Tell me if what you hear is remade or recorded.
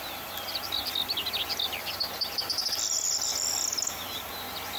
recorded